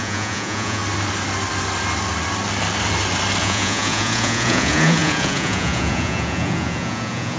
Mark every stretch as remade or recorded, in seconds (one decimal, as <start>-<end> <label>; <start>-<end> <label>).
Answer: 0.0-0.8 remade; 0.8-3.4 recorded; 3.4-7.4 remade